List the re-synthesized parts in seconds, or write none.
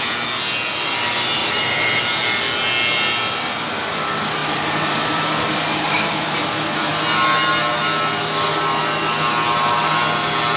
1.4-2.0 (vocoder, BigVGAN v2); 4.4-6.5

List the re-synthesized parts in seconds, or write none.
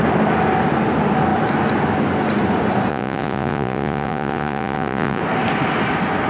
2.9-5.2 (vocoder, Vocos)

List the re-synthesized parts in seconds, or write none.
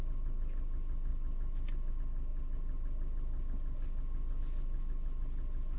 none